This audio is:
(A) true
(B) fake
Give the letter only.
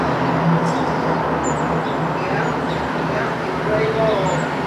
A